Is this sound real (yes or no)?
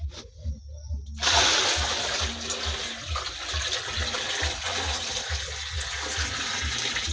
yes